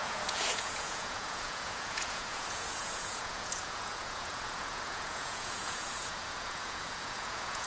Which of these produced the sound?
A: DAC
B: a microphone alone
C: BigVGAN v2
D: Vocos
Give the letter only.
D